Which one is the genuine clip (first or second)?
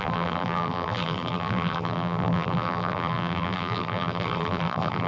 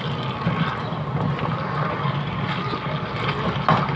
second